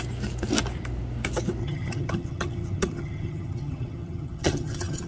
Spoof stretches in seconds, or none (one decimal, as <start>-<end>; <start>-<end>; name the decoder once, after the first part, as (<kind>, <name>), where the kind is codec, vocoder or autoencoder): 1.6-5.1 (vocoder, HiFi-GAN)